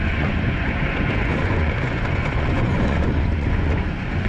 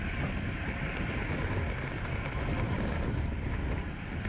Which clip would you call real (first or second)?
second